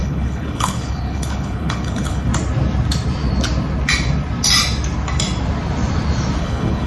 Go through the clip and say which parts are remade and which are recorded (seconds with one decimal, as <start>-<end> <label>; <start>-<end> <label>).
0.0-2.3 remade; 2.3-6.4 recorded; 6.4-6.9 remade